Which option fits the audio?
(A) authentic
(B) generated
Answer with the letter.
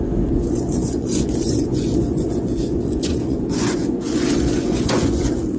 B